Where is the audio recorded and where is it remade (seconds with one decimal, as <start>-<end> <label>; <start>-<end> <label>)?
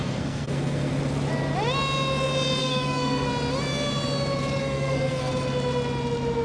0.0-0.9 remade; 0.9-2.6 recorded; 2.6-3.3 remade; 3.3-4.6 recorded; 4.6-5.3 remade; 5.3-6.4 recorded